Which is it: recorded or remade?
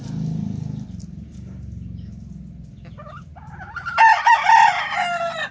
recorded